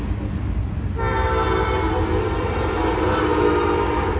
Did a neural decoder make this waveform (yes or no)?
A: no